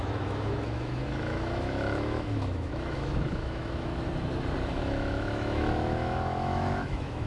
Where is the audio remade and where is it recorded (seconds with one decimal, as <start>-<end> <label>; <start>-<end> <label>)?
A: 0.0-3.9 remade; 3.9-4.8 recorded; 4.8-7.3 remade